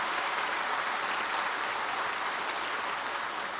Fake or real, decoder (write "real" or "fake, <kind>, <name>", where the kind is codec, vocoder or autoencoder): real